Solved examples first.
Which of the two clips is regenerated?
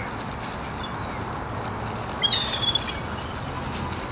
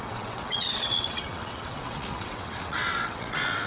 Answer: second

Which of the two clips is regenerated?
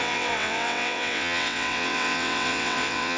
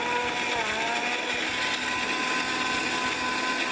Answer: first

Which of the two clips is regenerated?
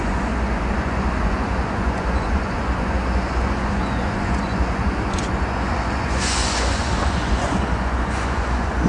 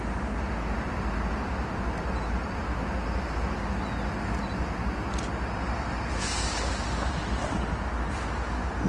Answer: first